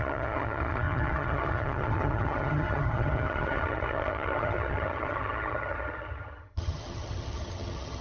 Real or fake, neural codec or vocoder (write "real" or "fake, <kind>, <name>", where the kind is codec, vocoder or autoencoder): fake, vocoder, HiFi-GAN